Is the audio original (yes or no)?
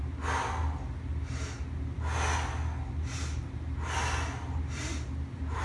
yes